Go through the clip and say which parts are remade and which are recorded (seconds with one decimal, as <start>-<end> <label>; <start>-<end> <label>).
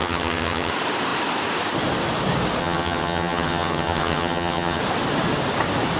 0.0-0.7 remade; 0.7-2.6 recorded; 2.6-4.8 remade; 4.8-6.0 recorded